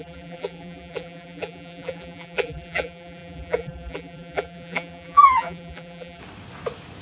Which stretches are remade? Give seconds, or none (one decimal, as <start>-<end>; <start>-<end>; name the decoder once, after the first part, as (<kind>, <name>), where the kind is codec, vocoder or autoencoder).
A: 0.0-6.2 (vocoder, BigVGAN v2)